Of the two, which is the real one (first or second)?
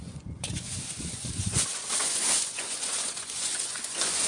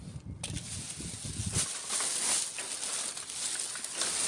second